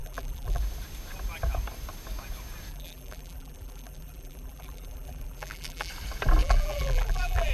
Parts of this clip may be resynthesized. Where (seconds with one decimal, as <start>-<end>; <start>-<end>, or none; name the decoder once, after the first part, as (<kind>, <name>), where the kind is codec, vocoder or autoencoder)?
0.0-0.6 (vocoder, BigVGAN v2); 2.7-5.9; 6.4-7.5